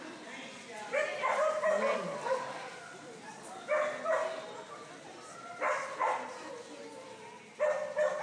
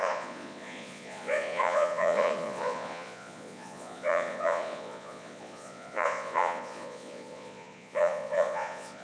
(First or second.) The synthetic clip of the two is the second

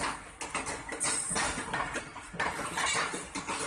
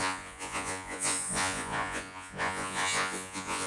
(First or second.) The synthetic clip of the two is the second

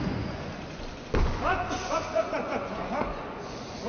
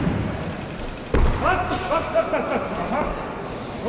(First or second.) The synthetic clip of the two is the first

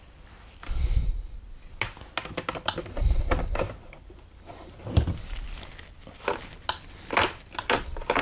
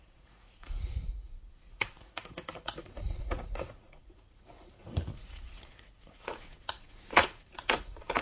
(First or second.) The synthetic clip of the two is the second